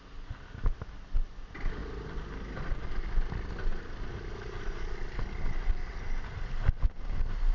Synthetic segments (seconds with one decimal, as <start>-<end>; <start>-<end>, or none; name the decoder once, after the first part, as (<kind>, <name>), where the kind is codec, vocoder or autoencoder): none